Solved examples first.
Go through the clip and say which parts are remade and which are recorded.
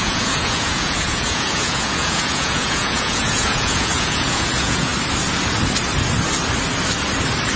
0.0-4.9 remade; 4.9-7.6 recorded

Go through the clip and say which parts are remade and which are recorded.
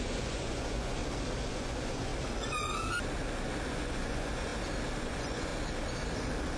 0.0-1.0 remade; 1.0-1.5 recorded; 1.5-2.1 remade; 2.1-3.7 recorded; 3.7-4.5 remade; 4.5-5.0 recorded; 5.0-5.5 remade; 5.5-6.6 recorded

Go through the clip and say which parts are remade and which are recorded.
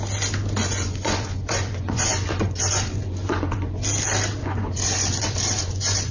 0.0-0.6 recorded; 0.6-3.8 remade; 3.8-4.4 recorded; 4.4-6.1 remade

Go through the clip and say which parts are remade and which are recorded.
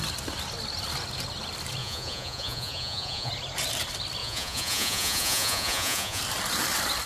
0.0-1.8 recorded; 1.8-3.3 remade; 3.3-4.2 recorded; 4.2-6.2 remade; 6.2-7.1 recorded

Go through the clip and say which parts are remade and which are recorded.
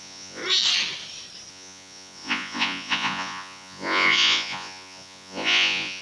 0.0-0.4 remade; 0.4-1.5 recorded; 1.5-6.0 remade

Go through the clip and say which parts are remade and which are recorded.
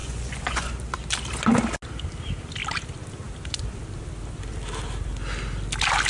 0.0-0.7 remade; 0.7-6.1 recorded